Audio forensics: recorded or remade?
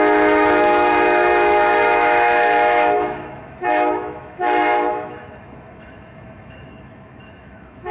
remade